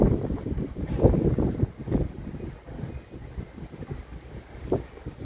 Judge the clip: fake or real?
real